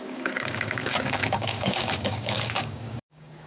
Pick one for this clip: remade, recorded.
remade